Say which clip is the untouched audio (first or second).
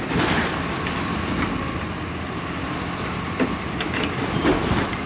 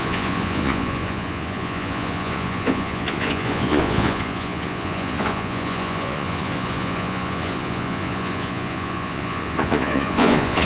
first